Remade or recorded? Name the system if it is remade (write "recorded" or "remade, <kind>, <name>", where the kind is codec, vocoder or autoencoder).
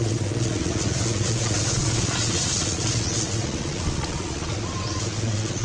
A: remade, vocoder, Vocos